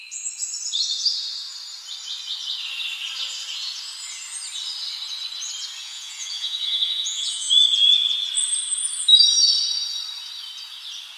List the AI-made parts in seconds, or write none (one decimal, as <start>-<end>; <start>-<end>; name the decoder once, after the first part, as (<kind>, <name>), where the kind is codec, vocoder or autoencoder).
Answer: 5.8-7.5 (vocoder, Vocos)